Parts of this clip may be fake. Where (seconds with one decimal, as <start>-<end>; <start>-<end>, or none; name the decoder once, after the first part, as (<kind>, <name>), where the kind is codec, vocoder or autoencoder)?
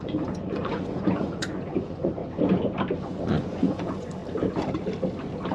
0.0-2.2 (vocoder, Vocos); 3.0-4.2